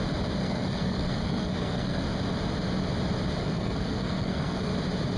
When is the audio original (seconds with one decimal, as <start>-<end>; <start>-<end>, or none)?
0.0-0.4; 2.0-3.4; 4.7-5.2